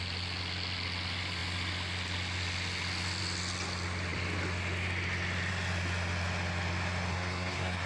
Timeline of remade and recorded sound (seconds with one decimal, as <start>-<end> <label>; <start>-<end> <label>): 0.0-7.1 recorded; 7.1-7.9 remade